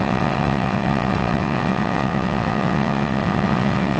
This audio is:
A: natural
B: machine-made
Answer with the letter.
B